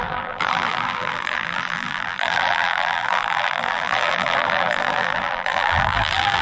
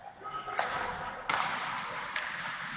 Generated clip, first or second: first